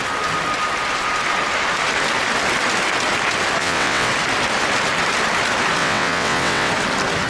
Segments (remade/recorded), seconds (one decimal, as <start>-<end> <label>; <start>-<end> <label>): 0.0-3.6 recorded; 3.6-4.1 remade; 4.1-5.8 recorded; 5.8-6.7 remade; 6.7-7.3 recorded